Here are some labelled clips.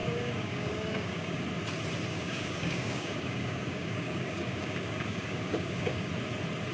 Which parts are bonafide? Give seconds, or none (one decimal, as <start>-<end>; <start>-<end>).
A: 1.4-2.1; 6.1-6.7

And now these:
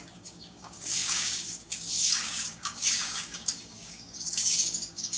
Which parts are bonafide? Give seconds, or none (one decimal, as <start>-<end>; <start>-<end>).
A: none

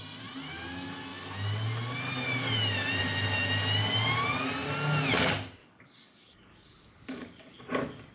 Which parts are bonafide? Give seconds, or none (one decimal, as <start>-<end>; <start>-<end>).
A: 0.0-5.6